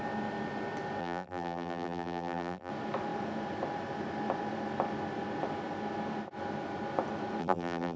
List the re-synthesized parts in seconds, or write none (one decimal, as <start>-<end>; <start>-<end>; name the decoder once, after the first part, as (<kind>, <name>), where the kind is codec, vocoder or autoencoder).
1.0-2.7 (vocoder, BigVGAN v2); 7.4-8.0